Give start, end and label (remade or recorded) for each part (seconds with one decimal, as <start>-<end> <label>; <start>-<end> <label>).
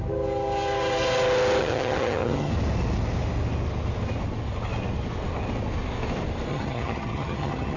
0.0-1.6 recorded; 1.6-2.5 remade; 2.5-6.5 recorded; 6.5-7.8 remade